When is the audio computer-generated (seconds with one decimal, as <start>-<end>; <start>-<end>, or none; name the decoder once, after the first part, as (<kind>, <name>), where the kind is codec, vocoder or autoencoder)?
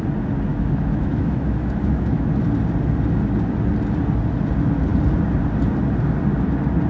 0.5-2.3 (autoencoder, DAC-VAE)